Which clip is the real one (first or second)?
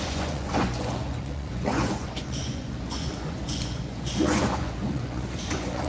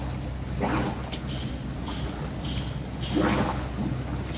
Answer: second